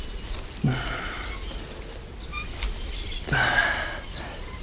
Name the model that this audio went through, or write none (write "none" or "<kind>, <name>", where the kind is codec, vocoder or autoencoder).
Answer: none